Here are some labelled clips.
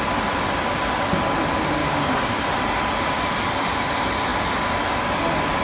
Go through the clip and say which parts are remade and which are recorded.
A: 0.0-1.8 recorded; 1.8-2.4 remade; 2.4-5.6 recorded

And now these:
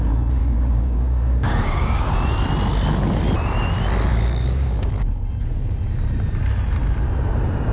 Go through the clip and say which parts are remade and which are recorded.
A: 0.0-0.4 recorded; 0.4-2.1 remade; 2.1-4.1 recorded; 4.1-4.9 remade; 4.9-7.7 recorded

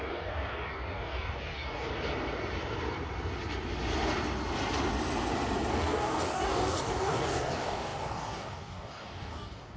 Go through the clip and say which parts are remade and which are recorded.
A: 0.0-1.9 remade; 1.9-5.7 recorded; 5.7-9.8 remade

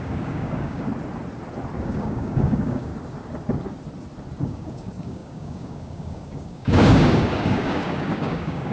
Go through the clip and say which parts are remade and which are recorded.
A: 0.0-0.9 remade; 0.9-1.8 recorded; 1.8-2.9 remade; 2.9-4.4 recorded; 4.4-8.7 remade

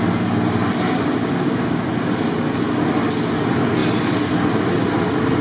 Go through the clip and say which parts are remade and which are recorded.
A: 0.0-1.2 recorded; 1.2-1.9 remade; 1.9-5.4 recorded